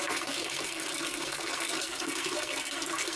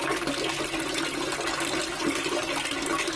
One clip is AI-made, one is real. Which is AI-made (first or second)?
first